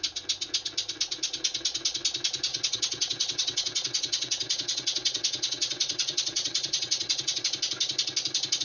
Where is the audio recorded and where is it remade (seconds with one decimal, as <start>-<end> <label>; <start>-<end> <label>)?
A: 0.0-2.5 recorded; 2.5-7.4 remade; 7.4-8.6 recorded